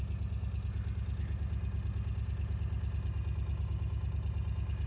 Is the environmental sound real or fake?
real